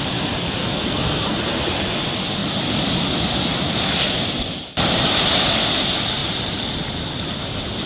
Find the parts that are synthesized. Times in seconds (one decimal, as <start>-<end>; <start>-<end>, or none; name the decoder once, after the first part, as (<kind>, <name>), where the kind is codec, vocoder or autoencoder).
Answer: 0.6-1.4 (codec, SNAC)